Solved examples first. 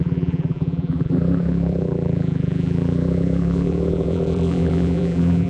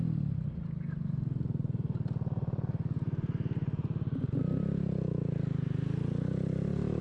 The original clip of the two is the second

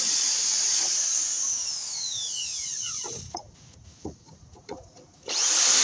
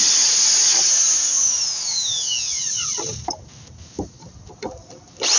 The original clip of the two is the second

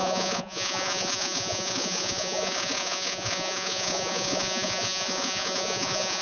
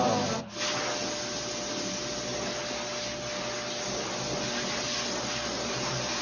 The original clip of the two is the second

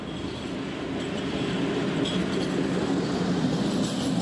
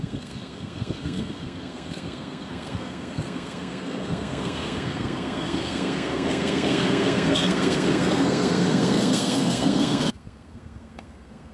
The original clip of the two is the first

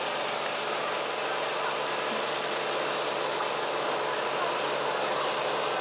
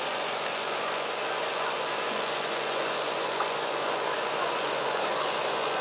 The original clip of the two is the first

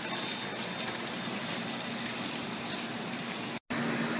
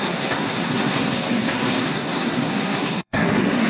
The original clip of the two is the first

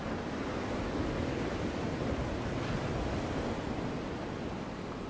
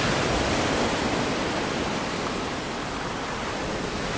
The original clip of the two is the first